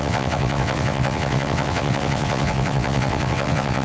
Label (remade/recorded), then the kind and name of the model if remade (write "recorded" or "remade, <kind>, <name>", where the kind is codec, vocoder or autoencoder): remade, vocoder, WaveNeXt